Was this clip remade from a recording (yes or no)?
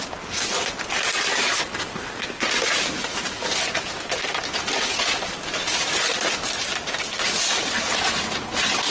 no